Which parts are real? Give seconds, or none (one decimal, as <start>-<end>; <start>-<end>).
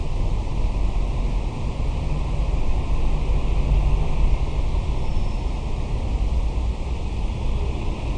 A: 0.0-8.2